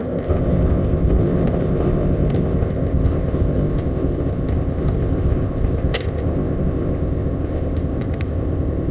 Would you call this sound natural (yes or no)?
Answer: no